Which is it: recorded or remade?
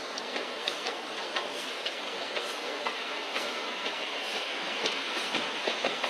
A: remade